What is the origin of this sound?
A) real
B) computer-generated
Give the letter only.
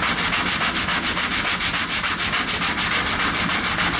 A